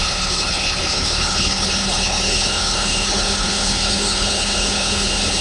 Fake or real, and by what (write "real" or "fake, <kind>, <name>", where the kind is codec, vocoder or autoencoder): fake, codec, HILCodec